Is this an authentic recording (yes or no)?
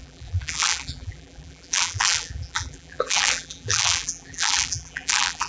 no